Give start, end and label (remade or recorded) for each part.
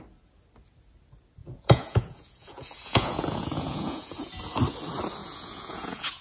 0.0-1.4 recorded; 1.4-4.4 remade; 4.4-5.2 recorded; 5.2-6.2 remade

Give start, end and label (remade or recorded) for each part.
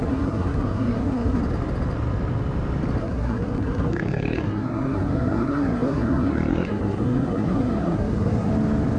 0.0-1.4 remade; 1.4-3.0 recorded; 3.0-8.5 remade; 8.5-9.0 recorded